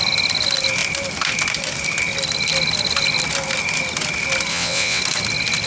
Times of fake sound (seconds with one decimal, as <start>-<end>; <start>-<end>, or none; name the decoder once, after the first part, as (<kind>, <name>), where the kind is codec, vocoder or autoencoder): 4.5-5.0 (vocoder, WaveNeXt)